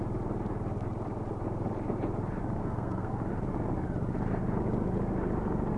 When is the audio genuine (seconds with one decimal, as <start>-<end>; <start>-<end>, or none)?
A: 0.0-2.6; 3.1-5.8